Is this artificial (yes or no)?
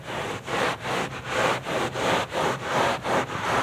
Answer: no